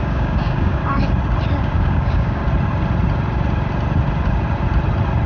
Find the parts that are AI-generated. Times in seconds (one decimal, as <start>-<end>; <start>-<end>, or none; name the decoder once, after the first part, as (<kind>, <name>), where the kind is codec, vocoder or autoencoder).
0.0-0.8 (codec, DAC); 1.6-2.4